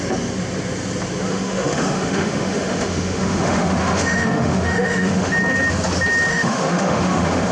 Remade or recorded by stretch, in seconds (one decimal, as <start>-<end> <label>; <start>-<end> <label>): 0.0-1.3 recorded; 1.3-5.3 remade; 5.3-6.3 recorded; 6.3-7.5 remade